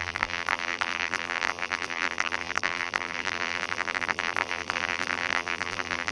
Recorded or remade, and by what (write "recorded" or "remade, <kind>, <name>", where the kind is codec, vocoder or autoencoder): remade, vocoder, BigVGAN v2